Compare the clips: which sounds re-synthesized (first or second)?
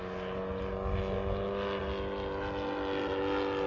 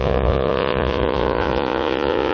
second